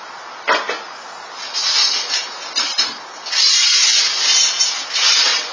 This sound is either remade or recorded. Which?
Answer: recorded